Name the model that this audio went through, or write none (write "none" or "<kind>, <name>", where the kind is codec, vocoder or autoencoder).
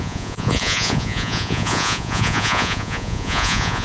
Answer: vocoder, Vocos